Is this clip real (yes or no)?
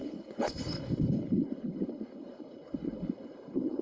no